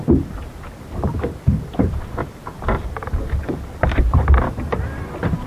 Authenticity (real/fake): real